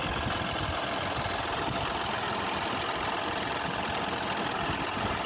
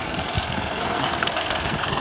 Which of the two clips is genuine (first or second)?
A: first